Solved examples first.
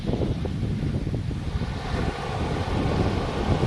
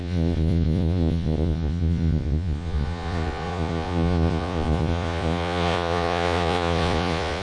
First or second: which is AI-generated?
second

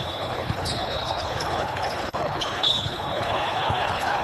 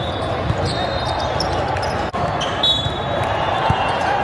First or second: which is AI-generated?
first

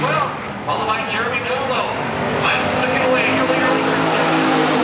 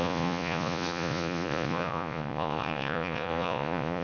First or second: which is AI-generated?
second